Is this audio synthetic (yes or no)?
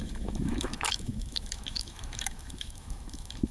yes